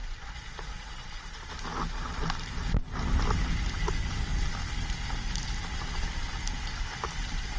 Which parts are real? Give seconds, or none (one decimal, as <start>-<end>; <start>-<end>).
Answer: 1.5-7.6